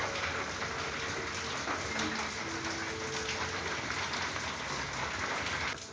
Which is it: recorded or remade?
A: recorded